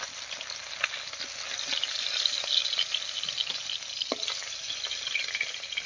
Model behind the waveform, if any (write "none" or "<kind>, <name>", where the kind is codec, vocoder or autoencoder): none